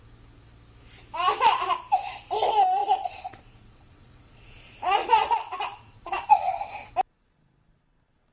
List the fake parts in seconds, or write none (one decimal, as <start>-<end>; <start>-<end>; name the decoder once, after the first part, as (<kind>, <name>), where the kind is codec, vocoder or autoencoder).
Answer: 2.8-6.9 (vocoder, Vocos)